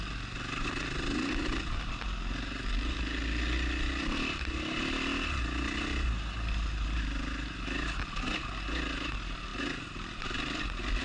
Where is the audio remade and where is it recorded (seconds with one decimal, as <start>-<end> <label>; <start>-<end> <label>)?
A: 0.0-11.0 recorded